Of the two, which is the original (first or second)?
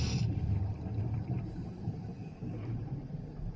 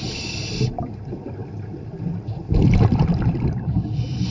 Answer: first